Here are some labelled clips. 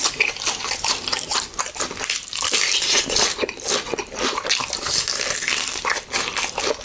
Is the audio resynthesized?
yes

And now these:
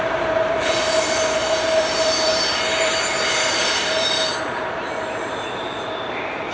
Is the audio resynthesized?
yes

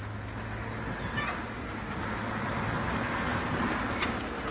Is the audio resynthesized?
no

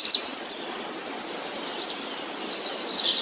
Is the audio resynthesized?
no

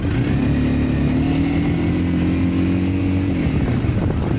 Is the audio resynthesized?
no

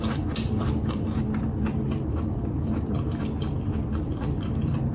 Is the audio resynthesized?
yes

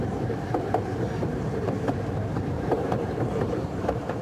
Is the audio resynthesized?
yes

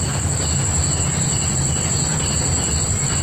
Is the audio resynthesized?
no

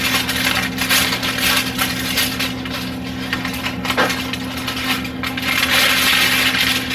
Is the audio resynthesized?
no